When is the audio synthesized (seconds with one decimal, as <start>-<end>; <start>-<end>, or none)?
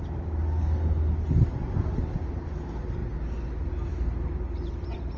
0.6-1.1